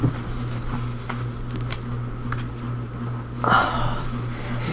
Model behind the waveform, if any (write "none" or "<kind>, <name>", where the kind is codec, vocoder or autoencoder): none